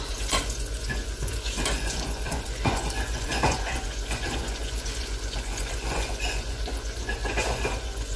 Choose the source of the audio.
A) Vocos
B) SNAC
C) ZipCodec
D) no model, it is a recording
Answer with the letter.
A